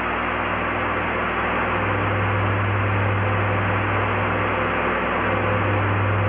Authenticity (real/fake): real